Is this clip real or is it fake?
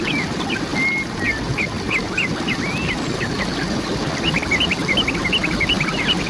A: real